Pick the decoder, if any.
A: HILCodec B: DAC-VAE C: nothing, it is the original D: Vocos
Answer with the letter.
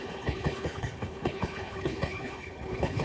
A